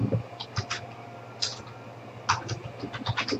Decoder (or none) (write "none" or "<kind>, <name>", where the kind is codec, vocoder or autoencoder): none